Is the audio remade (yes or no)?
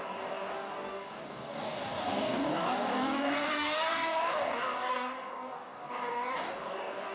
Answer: yes